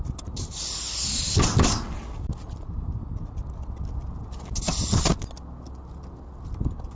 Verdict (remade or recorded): recorded